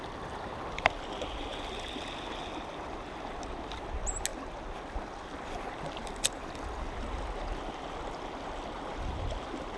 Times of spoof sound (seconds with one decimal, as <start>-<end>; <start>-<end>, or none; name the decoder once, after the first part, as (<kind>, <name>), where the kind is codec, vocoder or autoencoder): none